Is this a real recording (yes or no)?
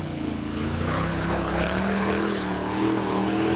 no